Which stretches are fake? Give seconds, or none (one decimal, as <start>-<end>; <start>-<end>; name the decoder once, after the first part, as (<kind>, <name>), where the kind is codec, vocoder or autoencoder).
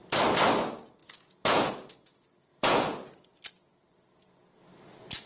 1.0-1.7 (vocoder, Vocos); 2.5-3.5